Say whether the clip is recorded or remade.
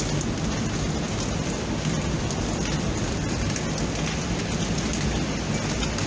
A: recorded